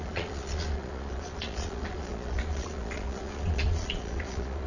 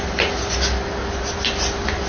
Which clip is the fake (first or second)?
first